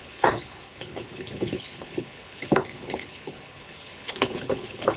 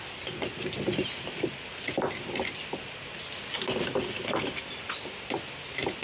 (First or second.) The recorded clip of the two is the second